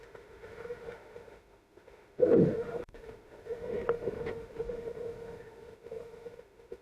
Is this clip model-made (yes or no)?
yes